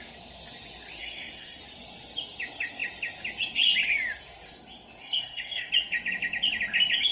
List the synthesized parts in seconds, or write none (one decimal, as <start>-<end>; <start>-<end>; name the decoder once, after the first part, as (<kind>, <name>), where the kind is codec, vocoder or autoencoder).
1.0-1.6 (codec, SNAC); 5.0-5.7